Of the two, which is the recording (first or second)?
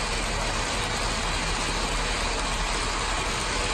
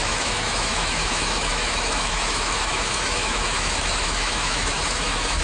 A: first